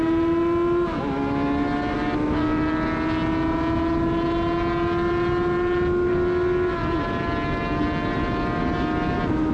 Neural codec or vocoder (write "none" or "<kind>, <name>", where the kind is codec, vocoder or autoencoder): none